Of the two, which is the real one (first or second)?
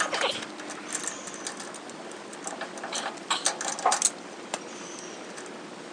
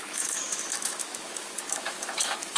first